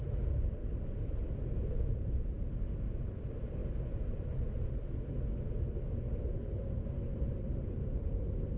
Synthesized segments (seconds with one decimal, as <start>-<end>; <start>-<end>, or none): none